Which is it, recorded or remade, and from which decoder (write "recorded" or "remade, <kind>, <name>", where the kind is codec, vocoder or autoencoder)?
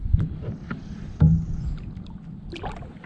recorded